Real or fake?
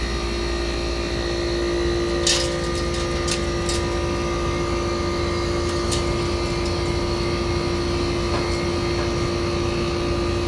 real